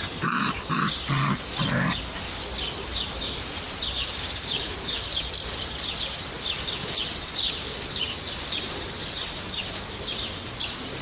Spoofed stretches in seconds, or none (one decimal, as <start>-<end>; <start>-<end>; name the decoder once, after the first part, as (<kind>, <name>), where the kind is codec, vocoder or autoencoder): 2.9-5.1 (vocoder, BigVGAN v2)